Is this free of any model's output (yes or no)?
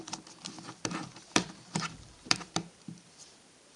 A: no